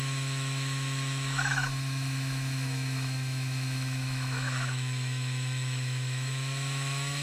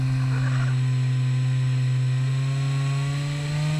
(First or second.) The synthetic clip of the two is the first